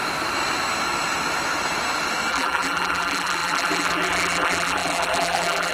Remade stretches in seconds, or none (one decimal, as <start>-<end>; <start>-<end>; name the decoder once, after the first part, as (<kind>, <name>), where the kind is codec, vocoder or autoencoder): 2.3-5.7 (vocoder, BigVGAN v2)